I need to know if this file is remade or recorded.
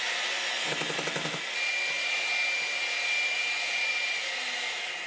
recorded